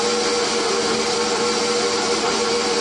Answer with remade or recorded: recorded